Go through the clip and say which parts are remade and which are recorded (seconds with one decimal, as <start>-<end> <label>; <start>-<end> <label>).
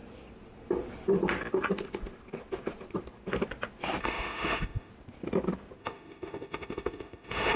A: 0.0-4.0 recorded; 4.0-4.9 remade; 4.9-5.8 recorded; 5.8-7.6 remade